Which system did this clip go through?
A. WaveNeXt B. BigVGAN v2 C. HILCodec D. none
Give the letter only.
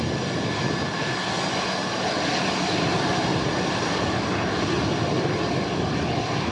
D